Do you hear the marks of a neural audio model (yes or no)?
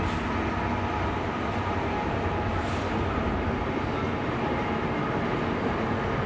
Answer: no